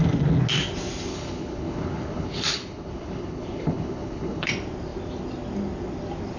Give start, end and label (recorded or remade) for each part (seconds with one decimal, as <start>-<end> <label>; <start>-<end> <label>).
0.0-1.1 recorded; 1.1-4.5 remade; 4.5-6.4 recorded